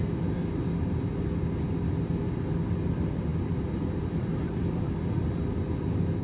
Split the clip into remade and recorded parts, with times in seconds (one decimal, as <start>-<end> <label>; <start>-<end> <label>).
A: 0.0-6.2 recorded